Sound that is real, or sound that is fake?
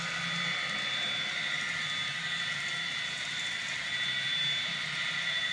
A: real